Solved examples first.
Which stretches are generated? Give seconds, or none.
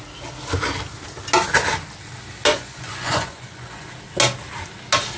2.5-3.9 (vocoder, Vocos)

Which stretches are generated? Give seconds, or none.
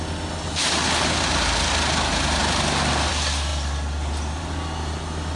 none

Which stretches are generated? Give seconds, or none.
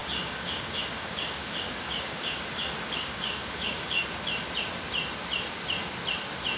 0.0-4.0 (codec, DAC)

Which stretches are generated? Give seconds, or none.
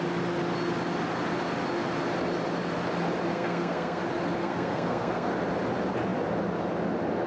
3.3-4.0 (codec, SNAC); 4.4-5.3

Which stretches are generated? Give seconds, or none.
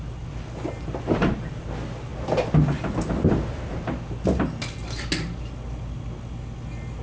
none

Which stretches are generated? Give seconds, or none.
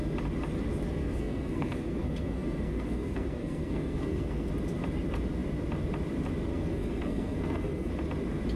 1.0-4.5 (codec, SNAC); 6.5-7.9